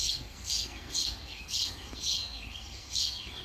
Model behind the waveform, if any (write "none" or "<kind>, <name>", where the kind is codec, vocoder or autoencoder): codec, SNAC